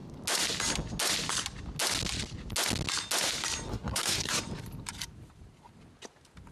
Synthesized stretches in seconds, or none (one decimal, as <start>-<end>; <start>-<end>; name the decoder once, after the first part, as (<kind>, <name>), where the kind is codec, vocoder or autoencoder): 3.7-4.4 (codec, SNAC)